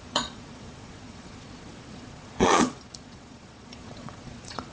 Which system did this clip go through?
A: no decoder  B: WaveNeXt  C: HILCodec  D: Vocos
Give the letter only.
D